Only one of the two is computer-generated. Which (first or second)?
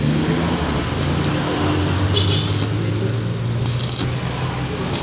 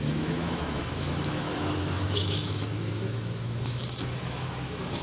second